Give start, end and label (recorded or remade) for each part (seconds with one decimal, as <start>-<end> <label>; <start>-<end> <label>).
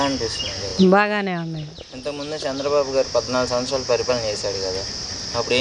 0.0-5.6 recorded